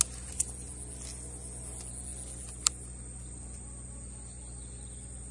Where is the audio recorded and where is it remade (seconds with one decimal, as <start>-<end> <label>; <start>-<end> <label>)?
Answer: 0.0-5.3 recorded